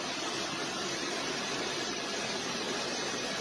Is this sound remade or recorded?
recorded